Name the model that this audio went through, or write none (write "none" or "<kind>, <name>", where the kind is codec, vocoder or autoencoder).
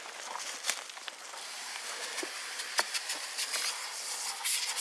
none